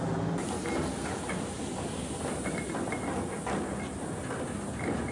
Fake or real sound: real